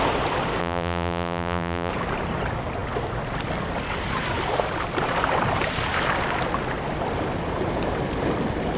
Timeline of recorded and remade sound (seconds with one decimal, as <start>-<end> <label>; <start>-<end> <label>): 0.0-0.6 recorded; 0.6-1.9 remade; 1.9-8.8 recorded